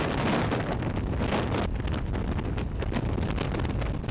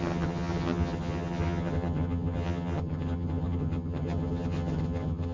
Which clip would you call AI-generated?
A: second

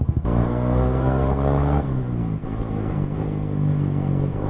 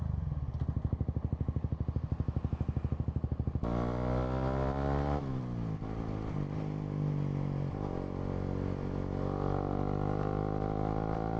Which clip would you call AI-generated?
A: first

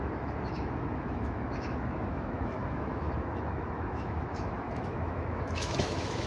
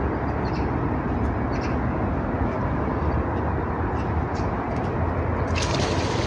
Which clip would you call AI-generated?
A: first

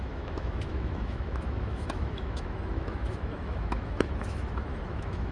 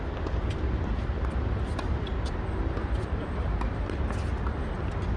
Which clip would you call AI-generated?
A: first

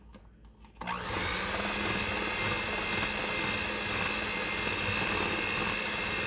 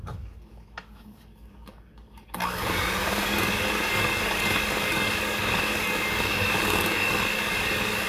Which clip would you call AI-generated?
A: second